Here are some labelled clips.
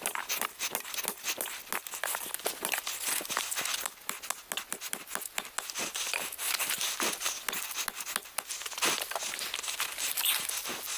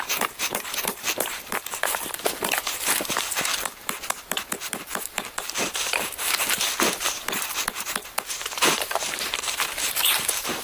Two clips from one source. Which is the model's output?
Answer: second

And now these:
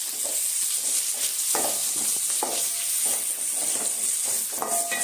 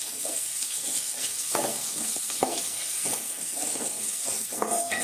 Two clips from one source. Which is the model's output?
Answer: second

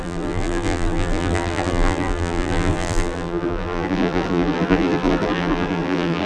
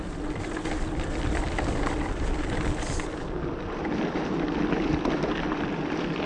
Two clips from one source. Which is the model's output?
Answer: first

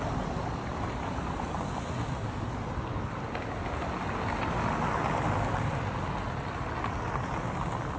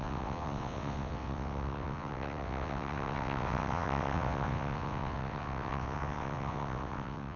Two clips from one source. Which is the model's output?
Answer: second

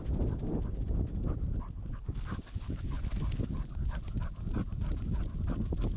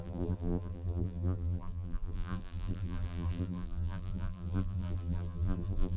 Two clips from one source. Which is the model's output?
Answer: second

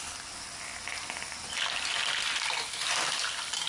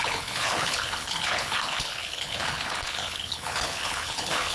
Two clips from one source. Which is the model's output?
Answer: second